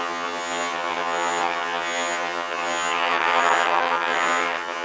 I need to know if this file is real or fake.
fake